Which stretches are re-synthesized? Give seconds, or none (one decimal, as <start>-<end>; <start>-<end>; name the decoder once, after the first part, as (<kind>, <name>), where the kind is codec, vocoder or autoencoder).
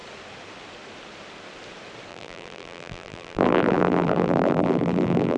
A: 2.1-5.4 (vocoder, BigVGAN v2)